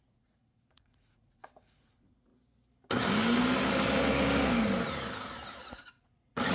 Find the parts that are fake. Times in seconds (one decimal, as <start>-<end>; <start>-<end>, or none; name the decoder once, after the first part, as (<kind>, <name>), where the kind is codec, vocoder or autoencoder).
0.0-2.3 (vocoder, Vocos); 5.7-6.5